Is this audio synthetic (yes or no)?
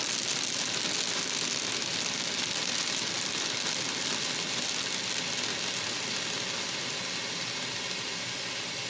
no